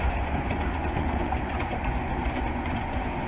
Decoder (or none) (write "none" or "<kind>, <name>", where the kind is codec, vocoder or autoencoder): vocoder, Vocos